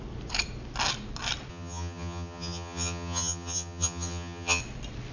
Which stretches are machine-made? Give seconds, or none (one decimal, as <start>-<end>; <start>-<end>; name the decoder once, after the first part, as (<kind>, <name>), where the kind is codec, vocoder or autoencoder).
1.5-4.6 (vocoder, HiFi-GAN)